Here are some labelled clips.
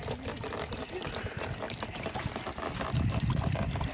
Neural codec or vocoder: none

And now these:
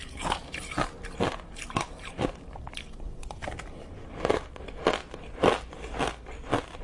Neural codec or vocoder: none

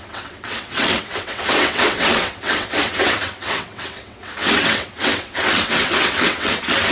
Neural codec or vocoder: vocoder, WaveNeXt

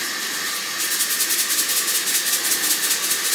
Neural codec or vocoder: none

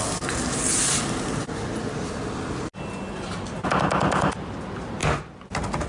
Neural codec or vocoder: none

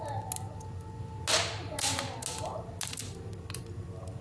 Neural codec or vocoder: none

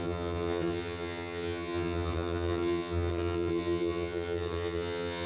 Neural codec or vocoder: vocoder, HiFi-GAN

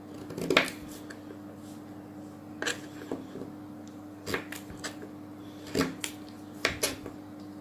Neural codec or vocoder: none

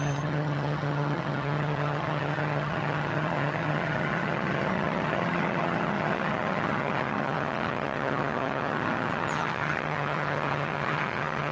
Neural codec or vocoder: vocoder, HiFi-GAN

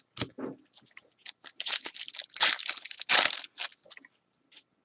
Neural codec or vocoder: none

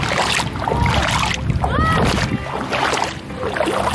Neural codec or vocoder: none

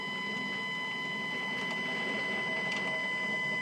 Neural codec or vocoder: none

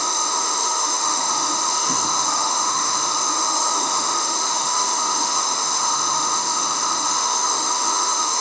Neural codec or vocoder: autoencoder, DAC-VAE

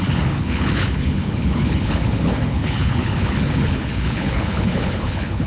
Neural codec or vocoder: codec, HILCodec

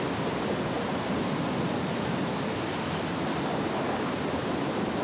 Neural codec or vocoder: none